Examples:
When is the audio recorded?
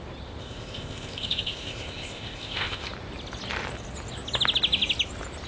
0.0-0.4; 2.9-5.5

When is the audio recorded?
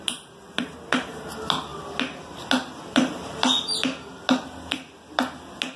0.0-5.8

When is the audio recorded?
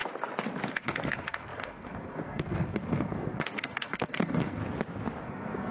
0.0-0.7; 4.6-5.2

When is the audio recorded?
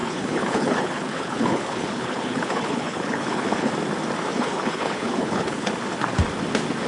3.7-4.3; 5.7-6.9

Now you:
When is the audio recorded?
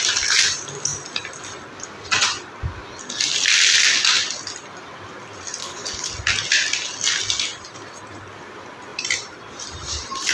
0.0-5.6; 6.1-10.3